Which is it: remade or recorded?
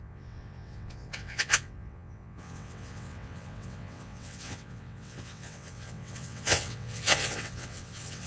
remade